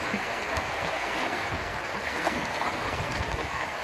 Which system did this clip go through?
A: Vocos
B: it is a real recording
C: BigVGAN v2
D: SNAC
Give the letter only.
D